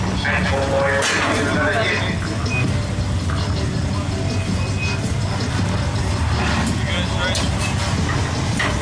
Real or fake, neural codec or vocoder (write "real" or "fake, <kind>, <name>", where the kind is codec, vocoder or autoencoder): real